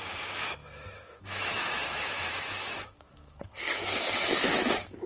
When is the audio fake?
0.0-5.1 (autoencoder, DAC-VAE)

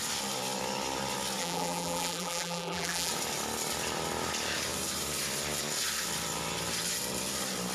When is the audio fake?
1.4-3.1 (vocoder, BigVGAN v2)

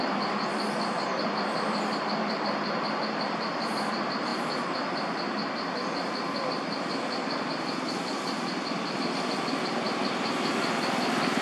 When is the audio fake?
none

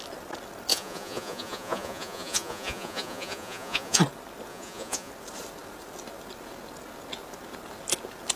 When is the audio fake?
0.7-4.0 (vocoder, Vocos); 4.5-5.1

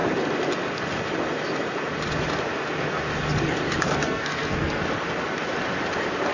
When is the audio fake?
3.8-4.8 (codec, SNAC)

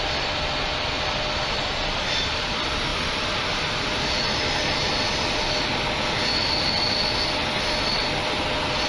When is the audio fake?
none

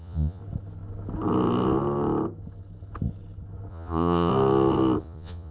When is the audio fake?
0.0-0.4 (vocoder, Vocos); 3.7-4.3; 5.0-5.5